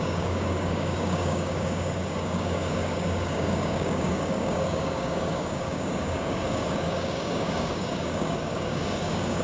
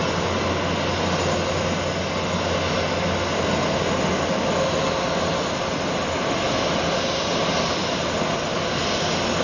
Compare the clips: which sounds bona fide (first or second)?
second